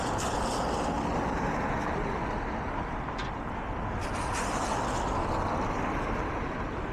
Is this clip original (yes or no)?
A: yes